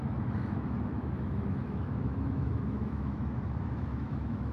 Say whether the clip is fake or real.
fake